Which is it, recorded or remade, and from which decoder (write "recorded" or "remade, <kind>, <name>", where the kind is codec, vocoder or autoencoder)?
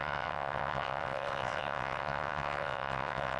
remade, vocoder, WaveNeXt